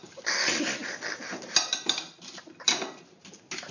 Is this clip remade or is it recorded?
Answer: recorded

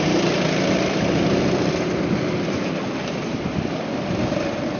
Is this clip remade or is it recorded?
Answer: recorded